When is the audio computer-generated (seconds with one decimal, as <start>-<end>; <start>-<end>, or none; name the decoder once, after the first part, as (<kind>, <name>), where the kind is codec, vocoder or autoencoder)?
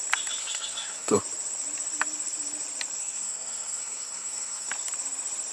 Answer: 0.4-1.2 (codec, SNAC); 3.0-4.7